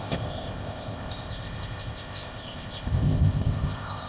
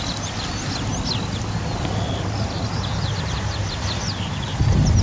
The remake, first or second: first